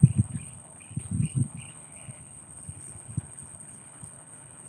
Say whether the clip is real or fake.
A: fake